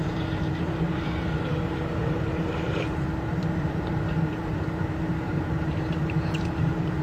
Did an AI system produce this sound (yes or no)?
yes